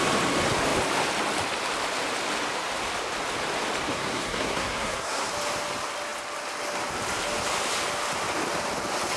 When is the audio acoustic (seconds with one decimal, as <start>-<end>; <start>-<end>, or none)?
0.0-3.9; 5.3-9.2